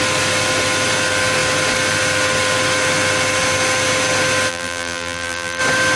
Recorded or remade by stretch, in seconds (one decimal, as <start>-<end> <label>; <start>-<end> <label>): 0.0-4.5 recorded; 4.5-5.6 remade; 5.6-6.0 recorded